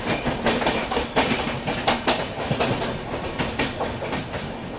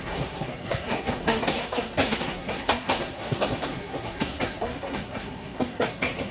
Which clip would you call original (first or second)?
first